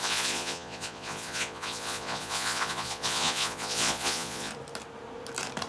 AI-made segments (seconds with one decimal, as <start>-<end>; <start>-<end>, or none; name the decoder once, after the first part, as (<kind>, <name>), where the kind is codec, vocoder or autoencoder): 0.0-4.5 (vocoder, Vocos)